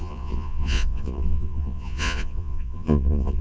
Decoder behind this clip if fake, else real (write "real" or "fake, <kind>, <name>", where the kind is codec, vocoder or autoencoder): fake, vocoder, Vocos